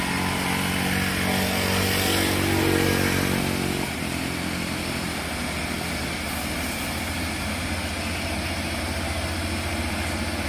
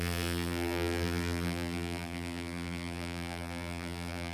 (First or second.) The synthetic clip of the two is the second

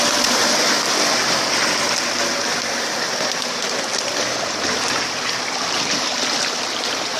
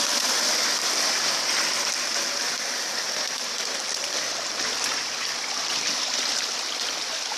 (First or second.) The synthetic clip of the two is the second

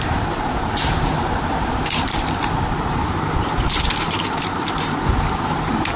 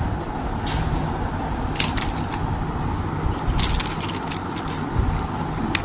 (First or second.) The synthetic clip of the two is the first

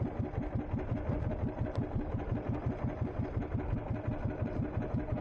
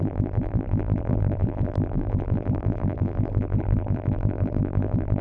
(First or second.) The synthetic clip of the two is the second